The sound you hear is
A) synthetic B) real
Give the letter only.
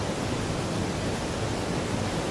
B